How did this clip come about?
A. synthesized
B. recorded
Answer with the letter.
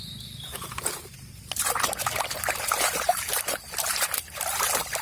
A